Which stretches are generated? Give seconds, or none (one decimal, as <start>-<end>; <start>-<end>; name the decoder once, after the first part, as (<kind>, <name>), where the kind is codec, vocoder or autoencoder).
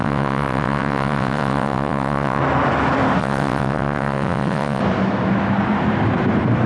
0.0-2.4 (vocoder, WaveNeXt); 3.2-4.8